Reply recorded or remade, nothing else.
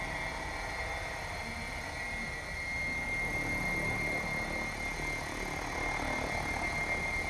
recorded